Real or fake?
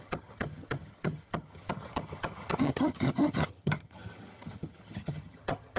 fake